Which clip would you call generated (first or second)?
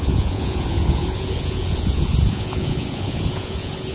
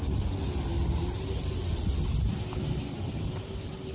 first